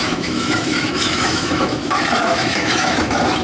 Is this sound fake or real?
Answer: fake